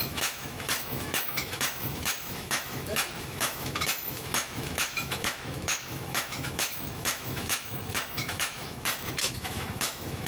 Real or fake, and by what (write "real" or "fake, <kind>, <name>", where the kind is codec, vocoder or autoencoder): fake, autoencoder, DAC-VAE